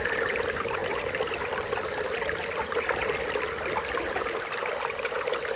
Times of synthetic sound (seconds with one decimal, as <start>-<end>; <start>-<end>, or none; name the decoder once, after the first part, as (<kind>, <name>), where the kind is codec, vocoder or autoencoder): 0.0-0.8 (vocoder, BigVGAN v2); 4.1-5.6